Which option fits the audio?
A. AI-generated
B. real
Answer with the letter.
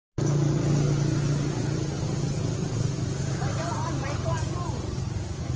B